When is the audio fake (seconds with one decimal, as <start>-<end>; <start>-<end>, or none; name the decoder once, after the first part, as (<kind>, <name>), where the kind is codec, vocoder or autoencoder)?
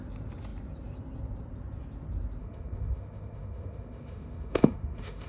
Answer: 2.4-5.3 (autoencoder, DAC-VAE)